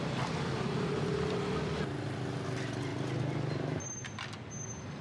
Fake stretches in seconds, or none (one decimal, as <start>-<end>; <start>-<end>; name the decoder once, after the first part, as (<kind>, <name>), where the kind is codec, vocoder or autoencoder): none

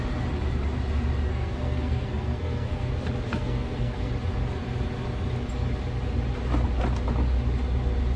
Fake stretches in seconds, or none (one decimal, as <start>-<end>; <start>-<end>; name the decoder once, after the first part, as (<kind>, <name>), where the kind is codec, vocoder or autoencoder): 1.3-2.9 (codec, SNAC); 3.3-4.1

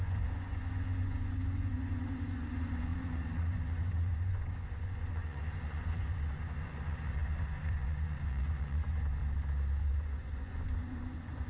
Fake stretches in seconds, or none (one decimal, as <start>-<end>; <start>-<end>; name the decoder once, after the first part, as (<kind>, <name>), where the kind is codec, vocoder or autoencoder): 0.0-9.2 (vocoder, Vocos); 9.8-11.5

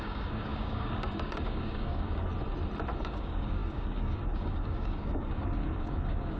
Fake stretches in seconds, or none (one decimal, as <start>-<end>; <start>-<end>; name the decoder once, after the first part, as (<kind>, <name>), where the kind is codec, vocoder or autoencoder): 0.0-2.3 (codec, DAC); 3.0-6.4

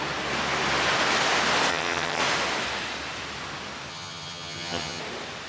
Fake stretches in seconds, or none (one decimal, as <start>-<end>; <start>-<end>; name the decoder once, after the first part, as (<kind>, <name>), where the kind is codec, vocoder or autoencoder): 1.7-2.2 (vocoder, HiFi-GAN); 3.9-5.0